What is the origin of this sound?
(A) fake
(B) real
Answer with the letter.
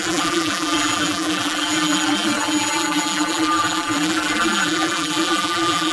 A